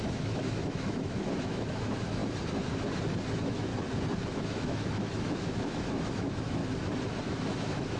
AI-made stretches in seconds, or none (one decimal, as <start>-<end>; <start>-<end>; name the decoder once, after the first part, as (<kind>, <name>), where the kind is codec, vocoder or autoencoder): 0.0-2.2 (autoencoder, DAC-VAE); 3.3-3.7; 4.3-6.6; 7.2-8.0